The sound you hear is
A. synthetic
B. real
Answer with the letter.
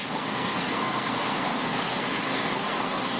A